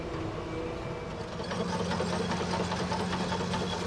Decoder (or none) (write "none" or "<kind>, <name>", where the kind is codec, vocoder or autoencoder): none